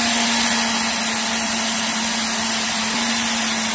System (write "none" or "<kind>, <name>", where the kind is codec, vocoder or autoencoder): none